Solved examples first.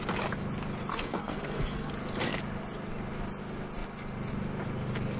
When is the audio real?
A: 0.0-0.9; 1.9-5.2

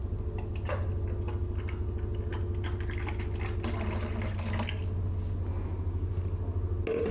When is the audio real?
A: 0.0-7.1

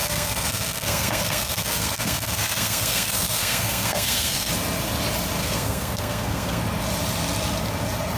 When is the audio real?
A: 4.5-5.4; 6.6-8.2

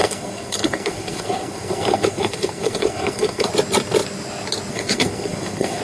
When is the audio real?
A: 3.5-4.7

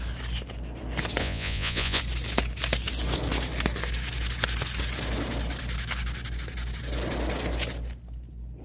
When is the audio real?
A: 0.0-1.2; 2.0-8.6

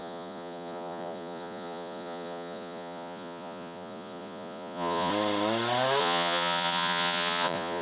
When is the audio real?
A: 5.1-6.0